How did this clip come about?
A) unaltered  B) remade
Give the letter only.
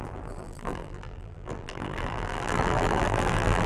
B